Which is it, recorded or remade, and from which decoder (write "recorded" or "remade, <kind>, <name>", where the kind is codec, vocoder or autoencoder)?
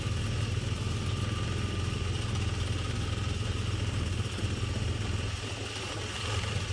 recorded